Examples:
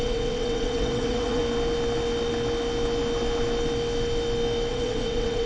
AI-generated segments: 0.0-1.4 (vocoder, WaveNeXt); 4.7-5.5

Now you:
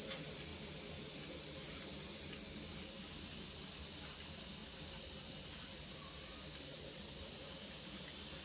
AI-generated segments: 6.7-7.2 (vocoder, WaveNeXt)